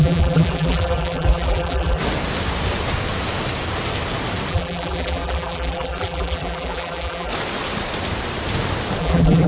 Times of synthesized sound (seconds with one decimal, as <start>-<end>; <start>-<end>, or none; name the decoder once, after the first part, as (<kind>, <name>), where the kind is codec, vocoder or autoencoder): 0.0-2.0 (vocoder, BigVGAN v2); 4.5-7.3; 9.0-9.5